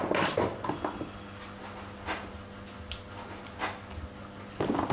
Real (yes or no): yes